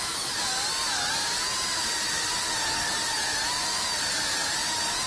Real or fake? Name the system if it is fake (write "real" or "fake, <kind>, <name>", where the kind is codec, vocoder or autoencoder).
real